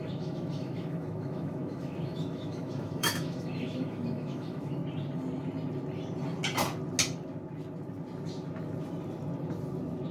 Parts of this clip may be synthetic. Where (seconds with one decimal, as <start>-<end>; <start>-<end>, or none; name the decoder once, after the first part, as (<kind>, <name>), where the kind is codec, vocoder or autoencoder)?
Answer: 0.0-4.8 (autoencoder, DAC-VAE)